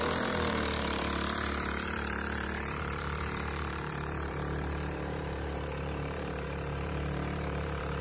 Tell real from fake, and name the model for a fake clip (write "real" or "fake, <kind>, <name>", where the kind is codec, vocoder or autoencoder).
fake, vocoder, BigVGAN v2